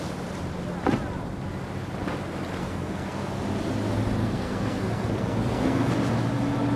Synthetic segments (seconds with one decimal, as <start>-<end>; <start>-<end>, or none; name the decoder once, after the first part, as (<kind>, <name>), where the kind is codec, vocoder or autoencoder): 2.6-3.3 (codec, SNAC); 4.2-5.9